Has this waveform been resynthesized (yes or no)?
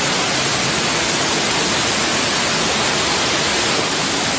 no